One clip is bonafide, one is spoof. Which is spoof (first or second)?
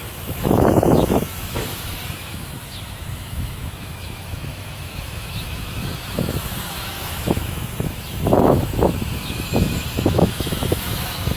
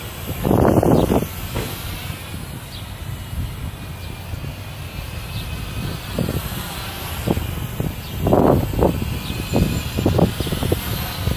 first